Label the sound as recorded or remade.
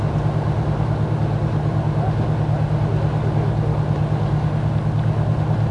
recorded